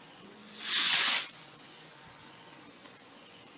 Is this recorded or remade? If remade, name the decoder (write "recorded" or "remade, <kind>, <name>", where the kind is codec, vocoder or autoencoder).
remade, vocoder, Vocos